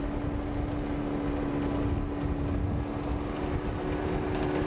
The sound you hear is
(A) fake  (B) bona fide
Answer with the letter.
B